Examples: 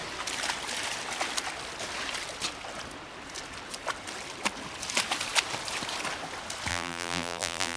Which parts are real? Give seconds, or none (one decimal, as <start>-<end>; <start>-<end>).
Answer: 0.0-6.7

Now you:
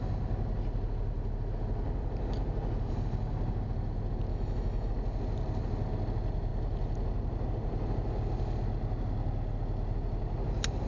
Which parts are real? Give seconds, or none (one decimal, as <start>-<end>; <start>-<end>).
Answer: 0.0-4.3; 4.9-10.9

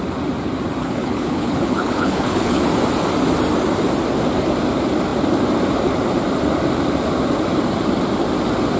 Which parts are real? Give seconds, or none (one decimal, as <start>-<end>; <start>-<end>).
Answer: 0.0-0.8; 2.6-8.8